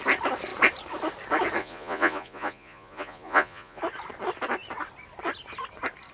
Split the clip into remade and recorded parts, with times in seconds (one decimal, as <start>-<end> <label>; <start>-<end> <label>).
0.0-1.6 recorded; 1.6-3.8 remade; 3.8-6.1 recorded